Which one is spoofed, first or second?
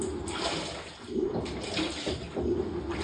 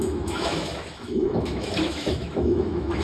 second